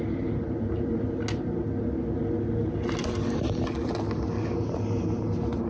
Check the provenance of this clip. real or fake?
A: real